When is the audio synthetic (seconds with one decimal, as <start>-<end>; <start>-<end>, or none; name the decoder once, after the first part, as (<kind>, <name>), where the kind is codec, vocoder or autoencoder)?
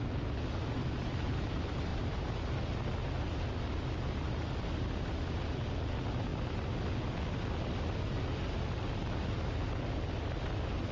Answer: 0.8-1.3 (vocoder, BigVGAN v2); 1.9-2.4; 3.0-3.5